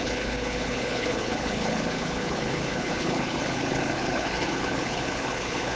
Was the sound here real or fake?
fake